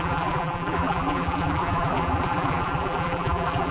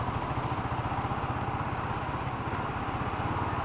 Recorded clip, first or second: second